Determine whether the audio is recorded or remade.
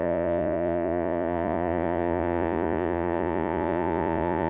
remade